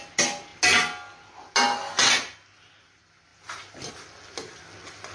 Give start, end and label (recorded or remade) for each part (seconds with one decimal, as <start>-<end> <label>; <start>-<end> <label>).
0.0-5.1 recorded